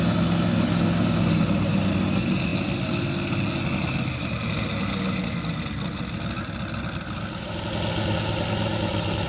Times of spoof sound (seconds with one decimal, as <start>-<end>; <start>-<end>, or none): none